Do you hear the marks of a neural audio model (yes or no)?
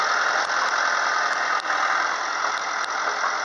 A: no